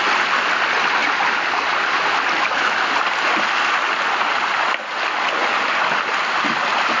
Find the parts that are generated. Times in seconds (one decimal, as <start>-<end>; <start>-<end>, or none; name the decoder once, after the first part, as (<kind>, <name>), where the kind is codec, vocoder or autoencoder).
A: none